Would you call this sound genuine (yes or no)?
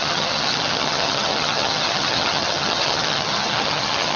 no